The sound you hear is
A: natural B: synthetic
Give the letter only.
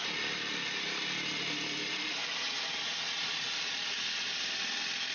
A